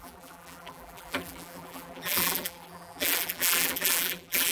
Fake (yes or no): yes